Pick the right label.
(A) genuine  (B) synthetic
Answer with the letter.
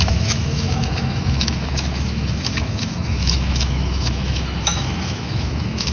B